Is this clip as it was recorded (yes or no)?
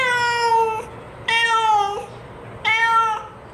yes